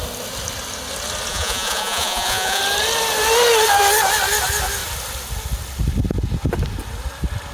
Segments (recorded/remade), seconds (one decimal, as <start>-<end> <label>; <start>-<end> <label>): 0.0-1.3 recorded; 1.3-2.6 remade; 2.6-7.5 recorded